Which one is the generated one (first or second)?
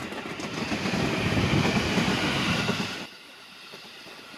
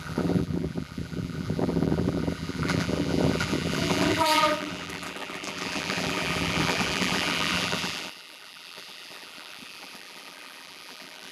second